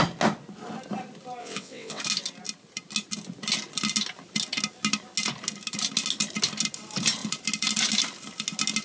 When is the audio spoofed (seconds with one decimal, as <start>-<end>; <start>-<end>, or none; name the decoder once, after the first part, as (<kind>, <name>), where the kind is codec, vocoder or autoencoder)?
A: 1.4-2.0 (vocoder, WaveNeXt)